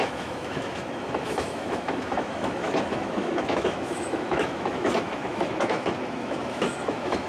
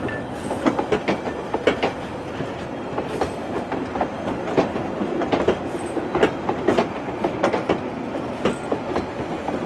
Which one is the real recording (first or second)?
second